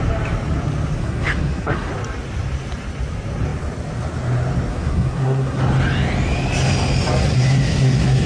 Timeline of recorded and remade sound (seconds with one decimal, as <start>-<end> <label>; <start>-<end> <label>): 0.0-1.0 recorded; 1.0-1.9 remade; 1.9-4.7 recorded; 4.7-5.6 remade; 5.6-7.2 recorded; 7.2-8.3 remade